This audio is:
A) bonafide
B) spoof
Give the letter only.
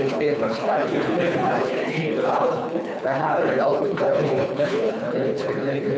B